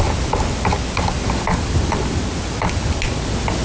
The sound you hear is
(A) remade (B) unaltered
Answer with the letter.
B